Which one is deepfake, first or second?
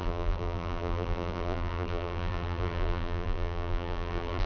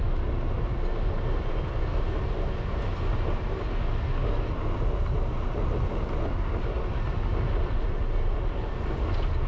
first